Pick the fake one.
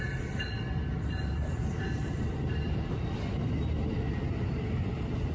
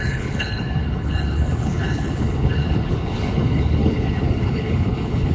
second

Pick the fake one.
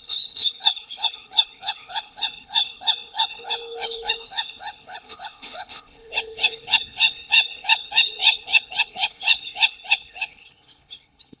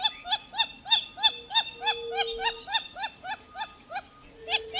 first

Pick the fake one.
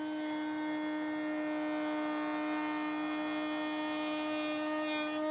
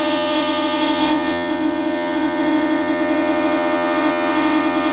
second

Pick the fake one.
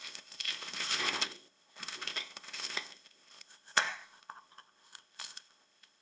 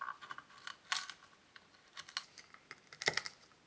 first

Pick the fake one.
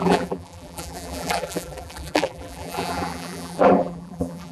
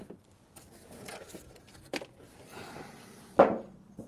first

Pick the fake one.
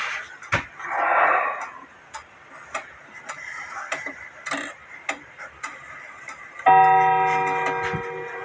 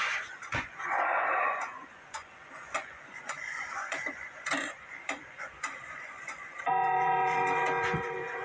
second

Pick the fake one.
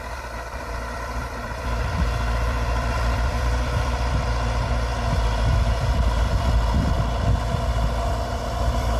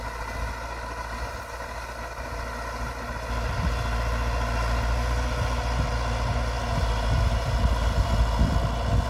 first